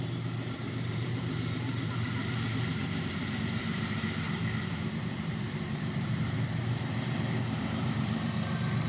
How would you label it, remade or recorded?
remade